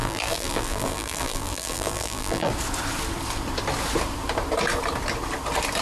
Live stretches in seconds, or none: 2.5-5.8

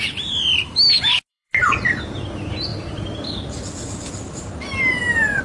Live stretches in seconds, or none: 0.0-1.3; 2.0-2.7

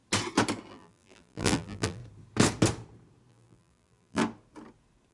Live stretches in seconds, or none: 0.0-0.7; 2.0-3.3; 4.2-5.1